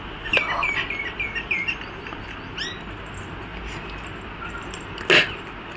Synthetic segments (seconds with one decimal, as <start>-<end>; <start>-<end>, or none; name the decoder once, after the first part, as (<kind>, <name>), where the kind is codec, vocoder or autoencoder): none